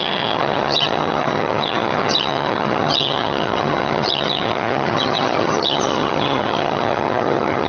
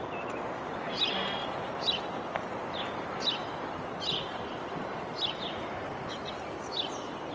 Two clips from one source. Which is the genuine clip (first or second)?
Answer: second